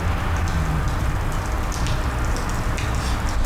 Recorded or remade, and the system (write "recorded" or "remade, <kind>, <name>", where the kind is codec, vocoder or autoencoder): recorded